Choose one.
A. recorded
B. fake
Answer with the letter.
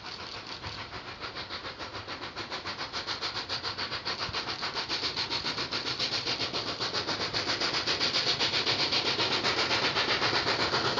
A